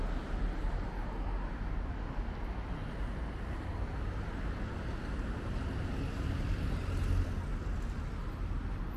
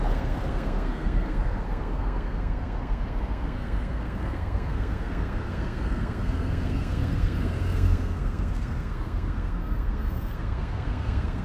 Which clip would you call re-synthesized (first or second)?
second